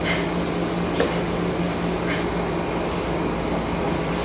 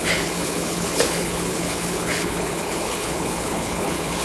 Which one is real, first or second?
first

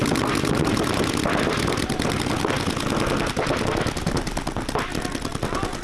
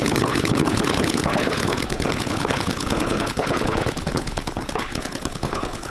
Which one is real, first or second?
first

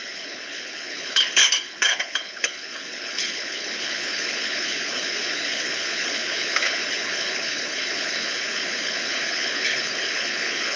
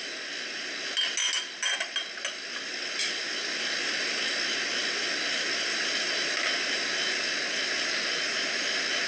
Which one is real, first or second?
second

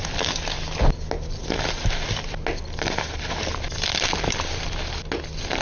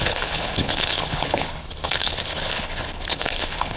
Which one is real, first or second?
first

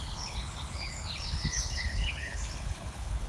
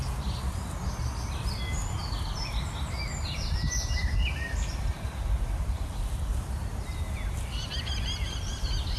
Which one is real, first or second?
second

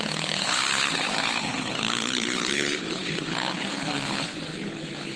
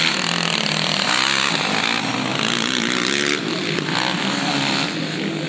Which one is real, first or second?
second